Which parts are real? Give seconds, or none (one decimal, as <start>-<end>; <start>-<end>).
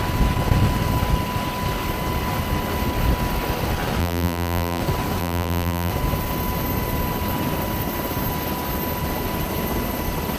0.0-4.0; 4.8-5.2; 5.9-10.4